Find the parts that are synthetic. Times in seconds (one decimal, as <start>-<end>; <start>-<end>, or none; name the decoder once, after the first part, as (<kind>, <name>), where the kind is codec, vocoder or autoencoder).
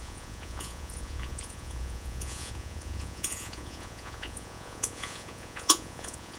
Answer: 0.0-6.4 (vocoder, Vocos)